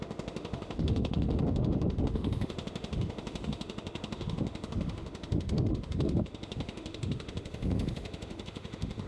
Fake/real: fake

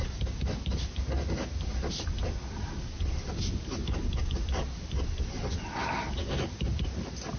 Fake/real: real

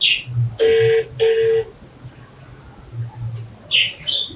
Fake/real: real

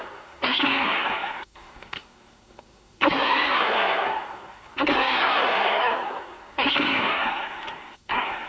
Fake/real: fake